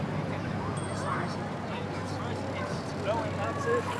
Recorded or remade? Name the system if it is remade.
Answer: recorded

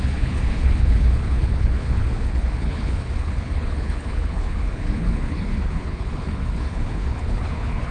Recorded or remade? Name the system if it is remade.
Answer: remade, codec, HILCodec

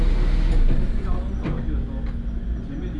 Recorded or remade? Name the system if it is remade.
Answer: recorded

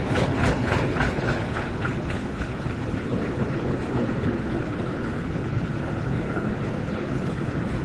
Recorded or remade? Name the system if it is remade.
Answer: remade, codec, HILCodec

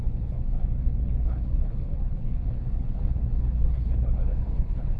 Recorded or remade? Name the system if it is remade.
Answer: remade, codec, HILCodec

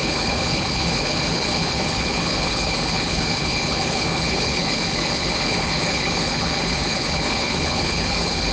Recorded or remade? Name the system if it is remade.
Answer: remade, codec, HILCodec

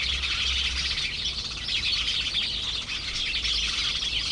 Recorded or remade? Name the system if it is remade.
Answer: recorded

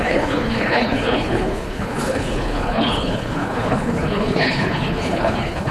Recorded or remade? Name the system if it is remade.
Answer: remade, codec, HILCodec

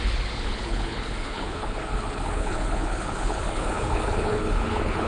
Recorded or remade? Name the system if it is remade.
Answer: remade, codec, HILCodec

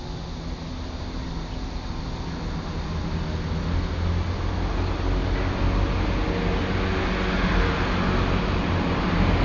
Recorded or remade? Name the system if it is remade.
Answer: recorded